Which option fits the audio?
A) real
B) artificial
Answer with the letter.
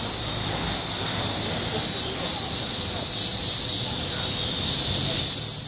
A